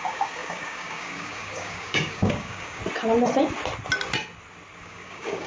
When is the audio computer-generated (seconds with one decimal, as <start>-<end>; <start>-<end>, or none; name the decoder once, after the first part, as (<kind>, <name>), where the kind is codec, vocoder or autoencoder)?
0.0-2.8 (codec, DAC); 4.8-5.5